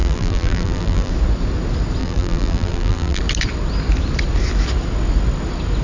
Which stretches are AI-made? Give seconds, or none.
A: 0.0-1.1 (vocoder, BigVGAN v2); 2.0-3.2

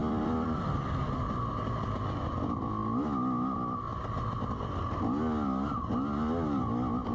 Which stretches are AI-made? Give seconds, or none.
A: 0.0-1.5 (vocoder, BigVGAN v2)

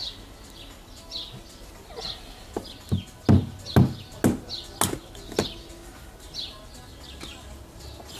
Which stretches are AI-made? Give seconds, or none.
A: none

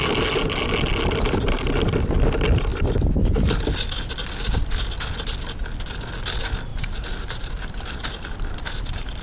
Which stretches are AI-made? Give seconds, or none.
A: 6.7-9.2 (vocoder, BigVGAN v2)

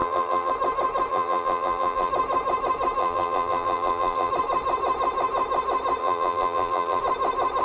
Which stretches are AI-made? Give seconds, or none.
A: 0.0-0.5 (vocoder, BigVGAN v2); 1.1-2.1; 3.0-4.3; 6.0-7.0

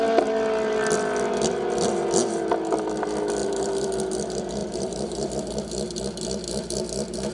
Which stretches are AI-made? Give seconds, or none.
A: 3.4-3.9 (vocoder, BigVGAN v2); 4.6-5.3

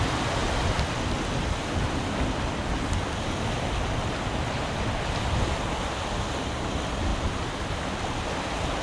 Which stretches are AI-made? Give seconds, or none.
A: none

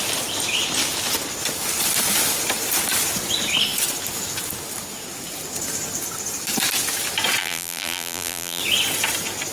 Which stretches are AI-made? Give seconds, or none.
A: 7.4-8.6 (vocoder, BigVGAN v2)